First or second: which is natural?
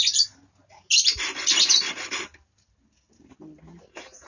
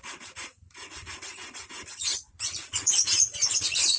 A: first